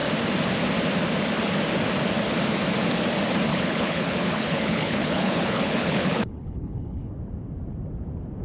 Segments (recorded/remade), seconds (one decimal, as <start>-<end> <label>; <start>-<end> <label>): 0.0-3.5 recorded; 3.5-7.1 remade; 7.1-8.4 recorded